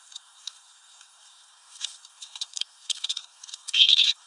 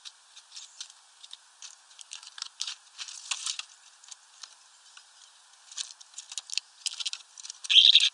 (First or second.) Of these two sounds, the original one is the second